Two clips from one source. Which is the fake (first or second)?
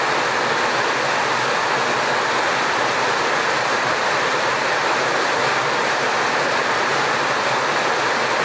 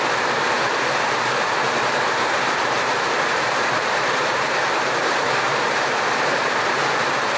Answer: second